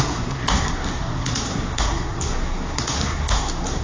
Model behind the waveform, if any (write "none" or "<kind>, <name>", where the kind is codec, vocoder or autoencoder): codec, SNAC